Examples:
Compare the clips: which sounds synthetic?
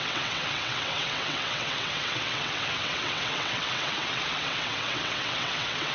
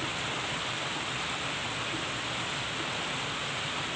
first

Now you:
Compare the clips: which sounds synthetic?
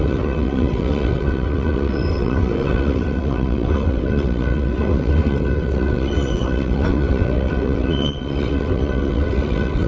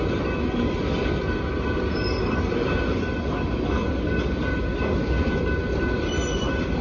first